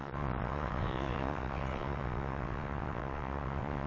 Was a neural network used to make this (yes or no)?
yes